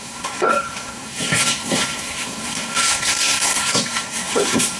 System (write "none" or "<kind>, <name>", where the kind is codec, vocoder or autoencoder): codec, SNAC